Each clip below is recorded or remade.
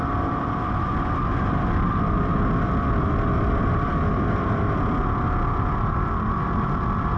recorded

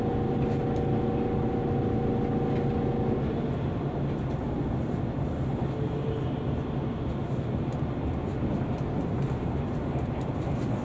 recorded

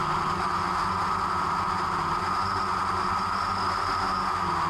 recorded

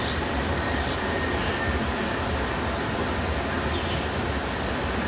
recorded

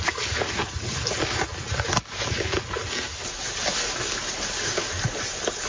recorded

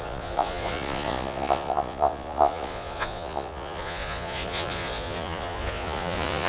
remade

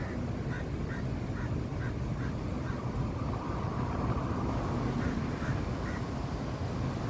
recorded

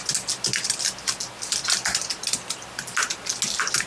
recorded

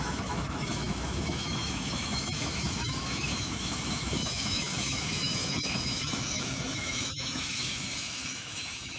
remade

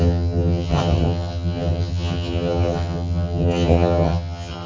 remade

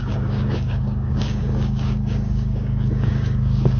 remade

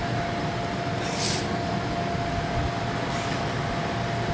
recorded